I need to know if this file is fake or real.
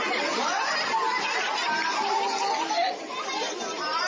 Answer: real